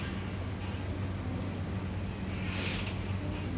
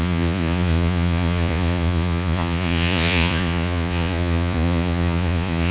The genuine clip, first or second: first